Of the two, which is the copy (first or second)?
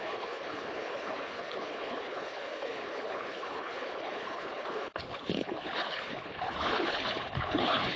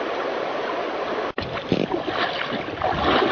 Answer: first